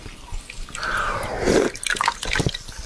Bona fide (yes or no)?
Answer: yes